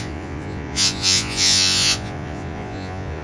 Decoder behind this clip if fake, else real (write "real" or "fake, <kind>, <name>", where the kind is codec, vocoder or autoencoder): fake, vocoder, Vocos